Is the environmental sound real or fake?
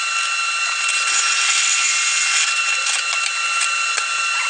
real